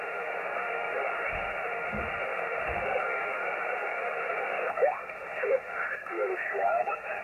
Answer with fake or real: fake